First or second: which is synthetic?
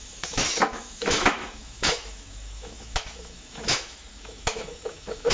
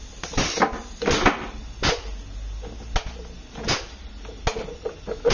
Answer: first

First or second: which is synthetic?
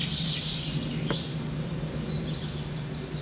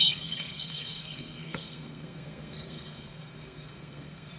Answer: second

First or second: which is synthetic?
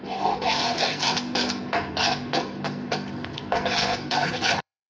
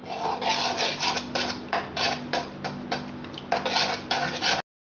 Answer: first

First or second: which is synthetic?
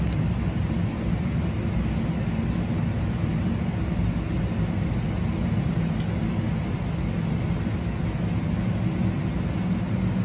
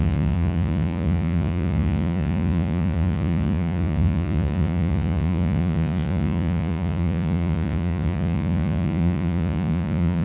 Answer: second